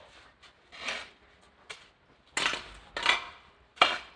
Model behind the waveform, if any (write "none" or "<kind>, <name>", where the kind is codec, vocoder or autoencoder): none